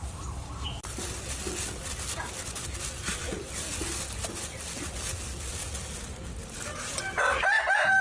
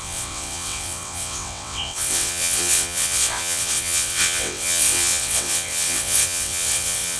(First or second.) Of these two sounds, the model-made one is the second